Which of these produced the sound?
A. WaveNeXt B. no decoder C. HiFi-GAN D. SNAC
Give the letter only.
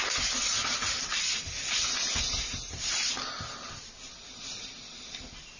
B